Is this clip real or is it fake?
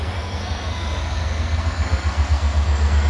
fake